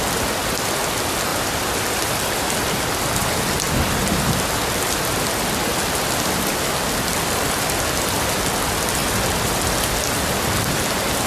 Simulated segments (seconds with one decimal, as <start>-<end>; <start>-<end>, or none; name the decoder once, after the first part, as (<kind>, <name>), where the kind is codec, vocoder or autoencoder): 1.3-3.3 (vocoder, BigVGAN v2); 5.7-6.9